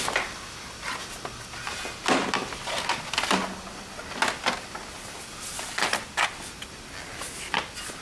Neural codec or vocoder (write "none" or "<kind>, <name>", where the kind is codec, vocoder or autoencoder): none